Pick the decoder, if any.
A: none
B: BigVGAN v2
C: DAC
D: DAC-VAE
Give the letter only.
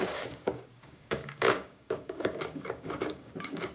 C